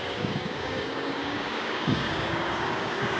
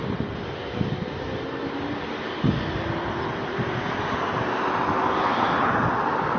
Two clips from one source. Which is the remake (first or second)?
first